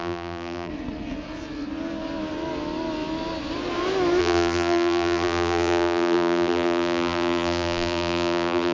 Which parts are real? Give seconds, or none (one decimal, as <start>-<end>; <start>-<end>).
0.7-4.2